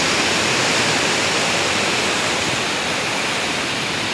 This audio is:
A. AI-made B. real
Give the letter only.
B